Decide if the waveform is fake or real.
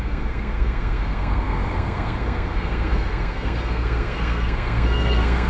fake